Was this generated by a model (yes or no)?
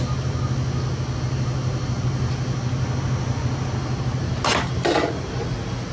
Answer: no